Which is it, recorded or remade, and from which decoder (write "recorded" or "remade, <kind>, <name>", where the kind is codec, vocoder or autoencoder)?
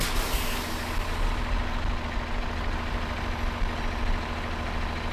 recorded